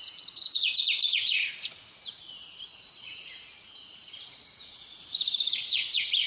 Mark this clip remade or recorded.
remade